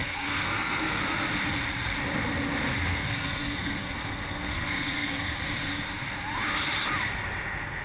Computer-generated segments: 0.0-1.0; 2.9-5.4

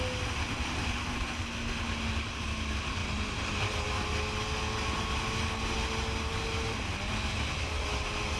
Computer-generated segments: none

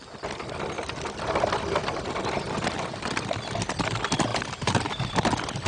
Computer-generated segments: 4.3-5.3

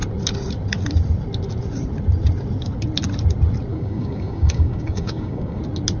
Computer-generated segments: 3.7-5.6